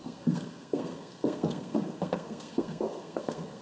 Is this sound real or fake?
fake